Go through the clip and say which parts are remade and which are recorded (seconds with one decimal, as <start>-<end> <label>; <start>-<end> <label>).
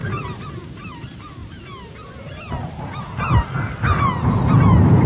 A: 0.0-1.4 remade; 1.4-4.5 recorded; 4.5-5.1 remade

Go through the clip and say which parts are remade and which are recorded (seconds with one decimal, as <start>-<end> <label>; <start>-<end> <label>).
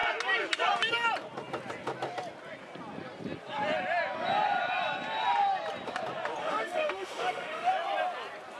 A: 0.0-6.4 recorded; 6.4-7.7 remade; 7.7-8.6 recorded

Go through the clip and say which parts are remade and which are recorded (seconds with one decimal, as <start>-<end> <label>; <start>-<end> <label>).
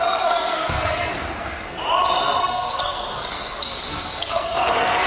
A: 0.0-1.8 remade; 1.8-2.4 recorded; 2.4-5.1 remade